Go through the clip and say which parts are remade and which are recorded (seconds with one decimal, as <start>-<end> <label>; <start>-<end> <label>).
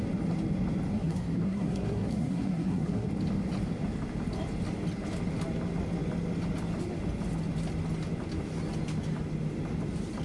0.0-0.9 recorded; 0.9-3.1 remade; 3.1-10.2 recorded